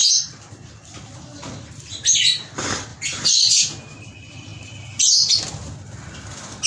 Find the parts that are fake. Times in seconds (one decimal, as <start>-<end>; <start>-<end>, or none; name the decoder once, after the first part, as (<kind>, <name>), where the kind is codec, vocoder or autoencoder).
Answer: 2.9-3.5 (vocoder, BigVGAN v2)